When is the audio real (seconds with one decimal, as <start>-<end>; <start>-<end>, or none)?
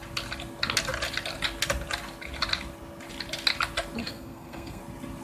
0.0-4.0; 4.8-5.2